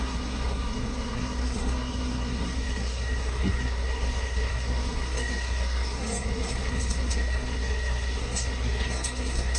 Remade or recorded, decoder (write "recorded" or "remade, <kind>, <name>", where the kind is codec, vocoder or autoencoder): remade, codec, SNAC